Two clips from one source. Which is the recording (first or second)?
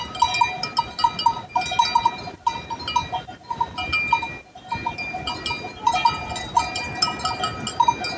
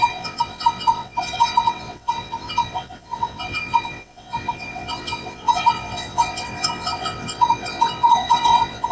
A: first